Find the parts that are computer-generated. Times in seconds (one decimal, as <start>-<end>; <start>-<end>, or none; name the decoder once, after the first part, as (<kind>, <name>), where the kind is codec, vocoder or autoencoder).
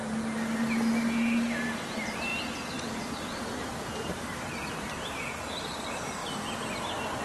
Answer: none